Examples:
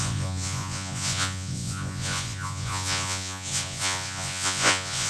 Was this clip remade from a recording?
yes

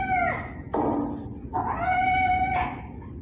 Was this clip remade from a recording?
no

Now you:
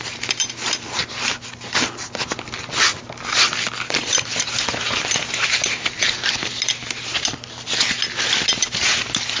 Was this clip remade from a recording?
no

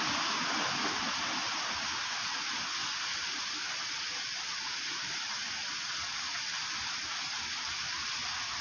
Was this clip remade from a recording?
no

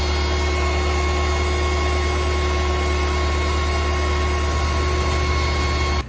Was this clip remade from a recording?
no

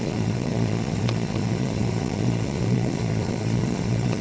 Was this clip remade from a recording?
yes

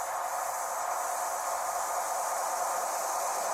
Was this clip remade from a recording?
no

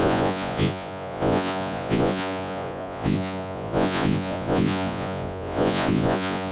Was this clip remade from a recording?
yes